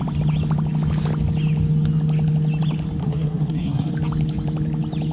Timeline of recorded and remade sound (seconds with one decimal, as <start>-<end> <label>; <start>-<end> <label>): 0.0-3.0 recorded; 3.0-3.9 remade; 3.9-5.1 recorded

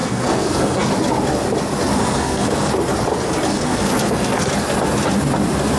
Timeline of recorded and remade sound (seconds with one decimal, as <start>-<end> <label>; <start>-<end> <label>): 0.0-0.9 remade; 0.9-2.0 recorded; 2.0-2.7 remade; 2.7-3.5 recorded; 3.5-4.5 remade; 4.5-5.8 recorded

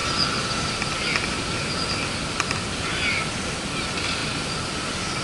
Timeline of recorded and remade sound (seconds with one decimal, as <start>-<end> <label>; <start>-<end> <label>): 0.0-5.2 recorded

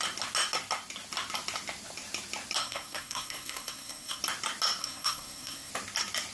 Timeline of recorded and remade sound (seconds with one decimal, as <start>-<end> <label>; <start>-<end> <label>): 0.0-2.6 recorded; 2.6-4.2 remade; 4.2-4.8 recorded; 4.8-5.7 remade; 5.7-6.3 recorded

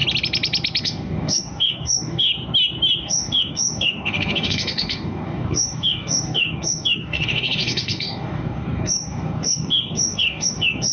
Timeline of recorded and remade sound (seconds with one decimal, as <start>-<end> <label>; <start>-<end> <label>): 0.0-0.8 recorded; 0.8-2.3 remade; 2.3-3.0 recorded; 3.0-10.9 remade

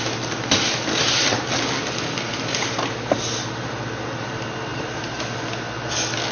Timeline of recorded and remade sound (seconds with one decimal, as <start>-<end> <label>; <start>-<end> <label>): 0.0-2.3 recorded; 2.3-2.9 remade; 2.9-4.7 recorded; 4.7-5.2 remade; 5.2-6.3 recorded

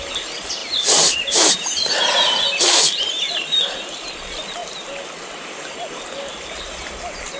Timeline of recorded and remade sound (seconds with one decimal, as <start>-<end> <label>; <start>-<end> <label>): 0.0-7.4 recorded

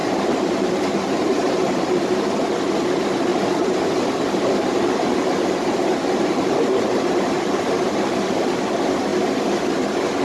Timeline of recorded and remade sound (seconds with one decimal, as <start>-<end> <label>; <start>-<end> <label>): 0.0-1.8 remade; 1.8-3.3 recorded; 3.3-8.3 remade; 8.3-10.2 recorded